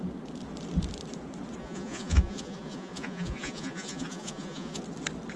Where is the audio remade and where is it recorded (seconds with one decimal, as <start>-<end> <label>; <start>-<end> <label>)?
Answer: 0.0-1.6 recorded; 1.6-4.8 remade; 4.8-5.4 recorded